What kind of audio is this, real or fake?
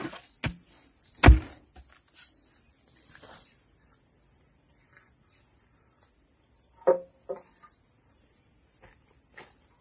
real